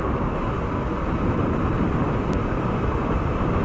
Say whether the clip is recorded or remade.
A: recorded